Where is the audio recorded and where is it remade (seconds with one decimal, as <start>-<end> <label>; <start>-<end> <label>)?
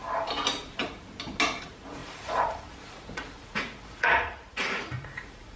0.0-2.0 recorded; 2.0-5.6 remade